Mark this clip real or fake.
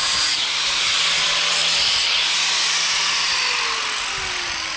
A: real